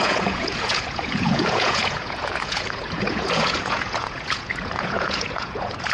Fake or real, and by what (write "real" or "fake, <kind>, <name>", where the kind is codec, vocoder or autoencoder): fake, vocoder, Vocos